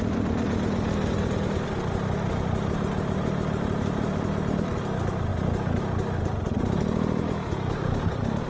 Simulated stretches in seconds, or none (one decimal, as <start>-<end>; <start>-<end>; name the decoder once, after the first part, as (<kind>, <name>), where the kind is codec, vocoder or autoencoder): 0.0-5.3 (vocoder, BigVGAN v2); 6.6-8.5